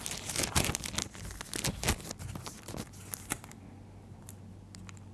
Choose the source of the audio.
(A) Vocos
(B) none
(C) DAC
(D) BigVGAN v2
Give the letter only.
B